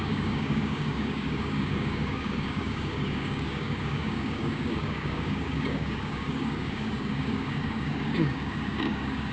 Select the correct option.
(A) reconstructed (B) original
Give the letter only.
A